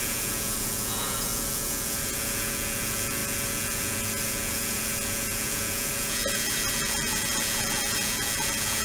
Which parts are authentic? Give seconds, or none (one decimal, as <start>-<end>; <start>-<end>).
none